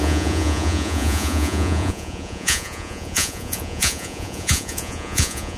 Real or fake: fake